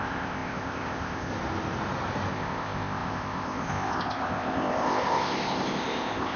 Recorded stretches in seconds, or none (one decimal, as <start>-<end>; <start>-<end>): 1.3-2.3